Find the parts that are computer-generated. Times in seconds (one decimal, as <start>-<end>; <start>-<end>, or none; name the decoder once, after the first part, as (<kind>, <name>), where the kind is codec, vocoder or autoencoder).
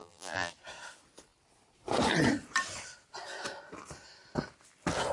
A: 0.0-0.5 (vocoder, BigVGAN v2)